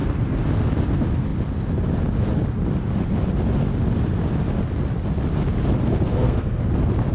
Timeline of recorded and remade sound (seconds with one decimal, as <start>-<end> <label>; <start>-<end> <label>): 0.0-6.1 recorded; 6.1-6.6 remade; 6.6-7.1 recorded